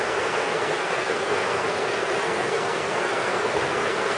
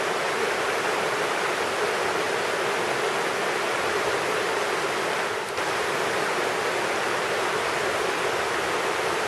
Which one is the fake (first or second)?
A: first